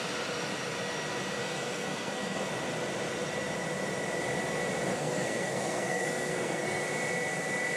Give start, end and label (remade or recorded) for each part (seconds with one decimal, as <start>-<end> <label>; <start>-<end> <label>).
0.0-1.4 recorded; 1.4-2.5 remade; 2.5-4.9 recorded; 4.9-6.8 remade; 6.8-7.8 recorded